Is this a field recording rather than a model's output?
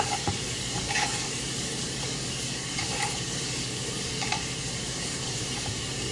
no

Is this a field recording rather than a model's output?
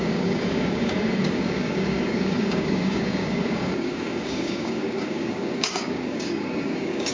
no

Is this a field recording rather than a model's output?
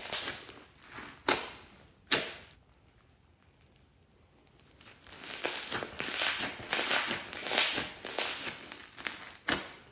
yes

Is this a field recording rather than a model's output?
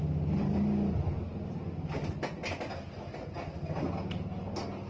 yes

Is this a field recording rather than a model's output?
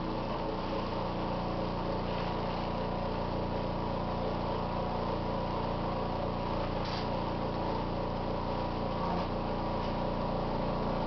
yes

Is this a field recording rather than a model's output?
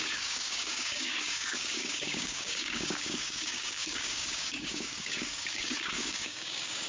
no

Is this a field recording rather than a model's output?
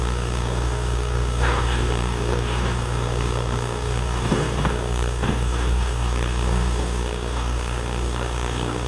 no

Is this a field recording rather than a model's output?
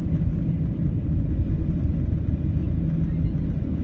yes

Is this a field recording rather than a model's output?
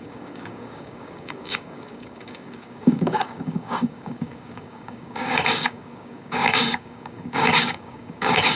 no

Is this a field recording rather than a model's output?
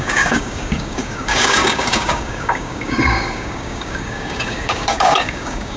no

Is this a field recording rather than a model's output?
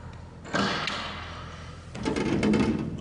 yes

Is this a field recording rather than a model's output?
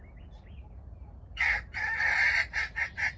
yes